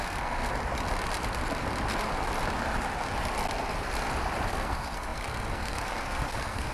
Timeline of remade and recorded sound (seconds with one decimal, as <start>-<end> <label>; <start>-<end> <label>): 0.0-0.5 remade; 0.5-4.5 recorded; 4.5-6.7 remade